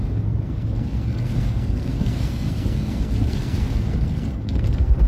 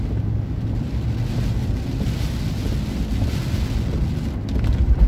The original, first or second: second